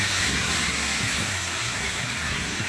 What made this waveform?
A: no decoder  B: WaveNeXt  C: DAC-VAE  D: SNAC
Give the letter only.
D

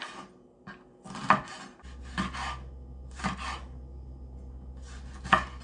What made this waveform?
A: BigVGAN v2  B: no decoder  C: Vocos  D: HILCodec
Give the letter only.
B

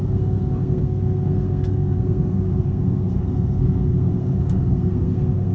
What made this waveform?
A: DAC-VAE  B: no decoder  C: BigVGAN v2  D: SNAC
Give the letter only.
D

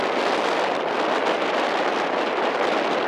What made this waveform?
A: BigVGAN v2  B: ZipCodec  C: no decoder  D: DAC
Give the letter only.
C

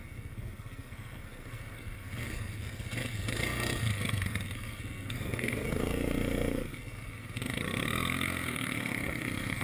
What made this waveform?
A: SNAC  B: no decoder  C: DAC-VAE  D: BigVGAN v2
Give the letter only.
A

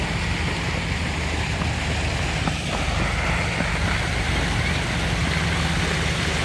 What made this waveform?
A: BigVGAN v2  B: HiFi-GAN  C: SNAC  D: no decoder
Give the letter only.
D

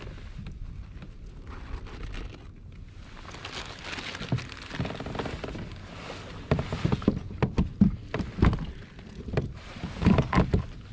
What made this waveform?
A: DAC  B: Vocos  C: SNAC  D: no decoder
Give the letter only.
D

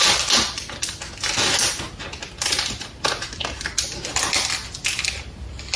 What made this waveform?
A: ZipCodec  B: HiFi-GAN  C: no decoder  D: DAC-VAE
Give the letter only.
C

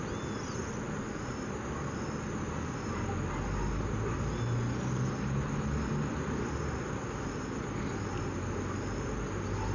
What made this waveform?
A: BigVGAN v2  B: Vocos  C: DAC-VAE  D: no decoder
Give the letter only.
D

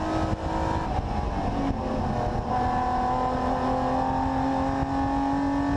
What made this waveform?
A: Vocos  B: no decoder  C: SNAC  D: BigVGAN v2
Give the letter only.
B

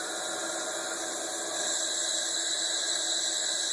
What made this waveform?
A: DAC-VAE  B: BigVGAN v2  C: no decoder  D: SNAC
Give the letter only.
C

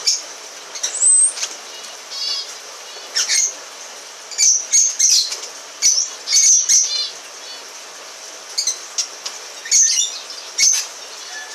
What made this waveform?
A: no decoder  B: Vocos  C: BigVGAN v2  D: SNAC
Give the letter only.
A